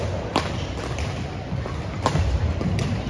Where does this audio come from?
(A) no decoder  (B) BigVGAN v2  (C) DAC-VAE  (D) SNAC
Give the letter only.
B